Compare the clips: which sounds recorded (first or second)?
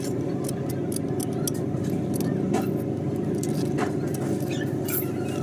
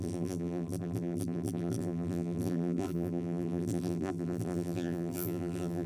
first